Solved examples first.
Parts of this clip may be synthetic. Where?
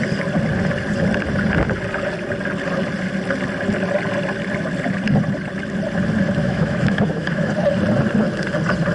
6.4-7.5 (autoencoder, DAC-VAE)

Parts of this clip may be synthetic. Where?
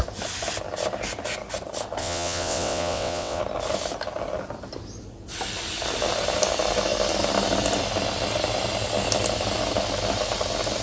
2.0-3.4 (vocoder, WaveNeXt)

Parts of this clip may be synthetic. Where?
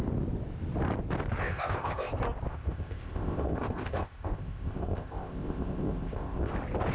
1.4-2.1 (codec, ZipCodec); 2.5-6.5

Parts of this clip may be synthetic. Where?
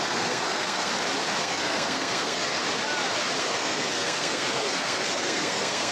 0.0-0.9 (codec, SNAC); 1.4-2.6; 3.4-5.9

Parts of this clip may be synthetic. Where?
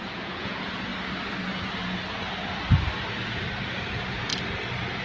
0.0-0.9 (vocoder, Vocos); 3.9-4.3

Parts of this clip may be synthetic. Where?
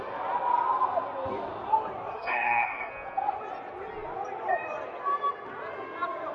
2.1-2.9 (codec, SNAC)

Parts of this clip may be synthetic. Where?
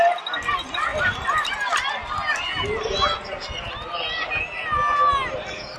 none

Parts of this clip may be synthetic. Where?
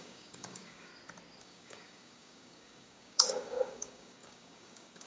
0.0-0.9 (codec, DAC); 1.4-5.1